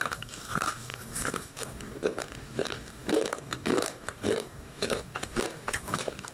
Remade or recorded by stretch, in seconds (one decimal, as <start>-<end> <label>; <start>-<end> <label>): 0.0-6.3 remade